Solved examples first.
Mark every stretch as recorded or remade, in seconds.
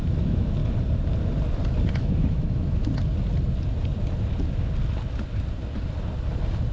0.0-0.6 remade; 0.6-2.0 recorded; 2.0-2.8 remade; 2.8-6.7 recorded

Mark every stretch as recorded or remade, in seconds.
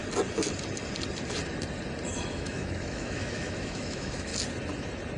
0.0-2.3 recorded; 2.3-4.3 remade; 4.3-5.2 recorded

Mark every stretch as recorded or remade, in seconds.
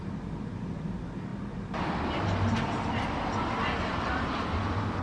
0.0-5.0 recorded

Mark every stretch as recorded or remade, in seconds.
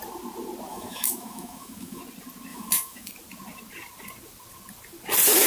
0.0-0.7 recorded; 0.7-2.0 remade; 2.0-2.5 recorded; 2.5-3.1 remade; 3.1-5.5 recorded